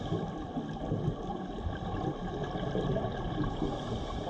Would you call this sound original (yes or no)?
yes